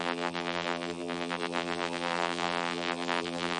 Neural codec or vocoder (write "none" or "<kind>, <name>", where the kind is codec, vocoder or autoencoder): vocoder, BigVGAN v2